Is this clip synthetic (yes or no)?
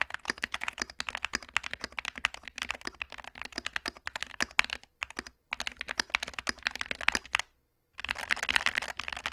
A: no